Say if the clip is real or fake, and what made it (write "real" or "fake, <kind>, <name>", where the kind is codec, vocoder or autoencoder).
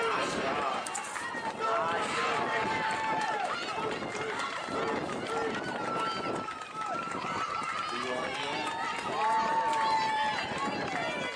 real